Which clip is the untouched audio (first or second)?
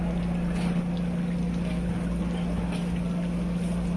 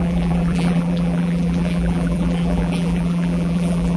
first